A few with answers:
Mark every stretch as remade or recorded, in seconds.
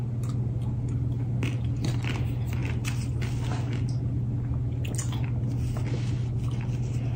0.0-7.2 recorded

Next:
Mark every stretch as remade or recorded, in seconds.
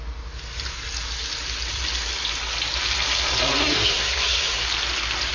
0.0-3.6 recorded; 3.6-4.6 remade; 4.6-5.3 recorded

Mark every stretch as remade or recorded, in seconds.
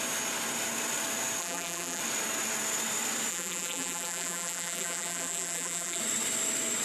0.0-1.4 recorded; 1.4-2.0 remade; 2.0-3.3 recorded; 3.3-6.0 remade; 6.0-6.8 recorded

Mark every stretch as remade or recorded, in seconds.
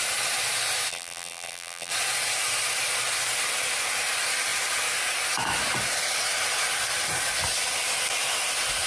0.0-0.9 recorded; 0.9-1.9 remade; 1.9-8.9 recorded